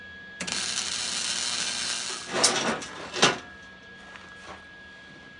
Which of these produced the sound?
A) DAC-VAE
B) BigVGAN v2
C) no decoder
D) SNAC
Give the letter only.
C